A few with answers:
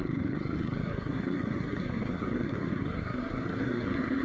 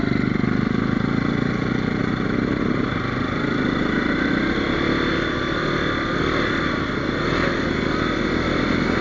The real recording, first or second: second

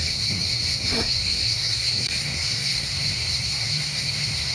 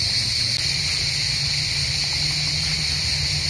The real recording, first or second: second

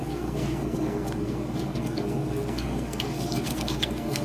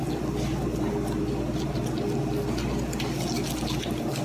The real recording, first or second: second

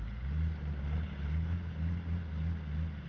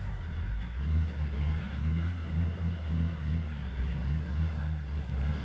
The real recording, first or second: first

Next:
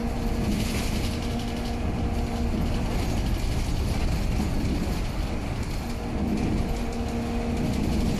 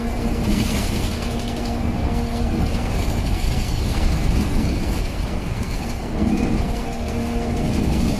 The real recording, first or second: first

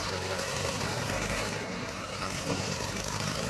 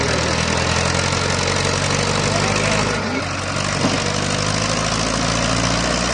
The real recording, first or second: second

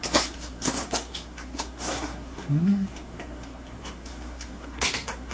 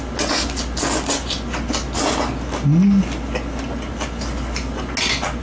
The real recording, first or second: second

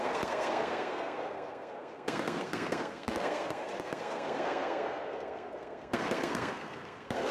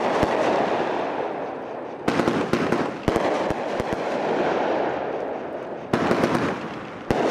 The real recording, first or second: second